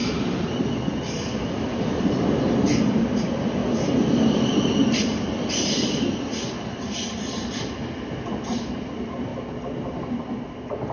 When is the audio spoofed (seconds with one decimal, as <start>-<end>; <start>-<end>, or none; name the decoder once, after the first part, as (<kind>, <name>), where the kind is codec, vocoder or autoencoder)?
none